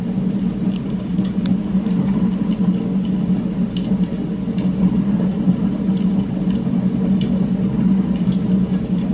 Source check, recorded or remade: recorded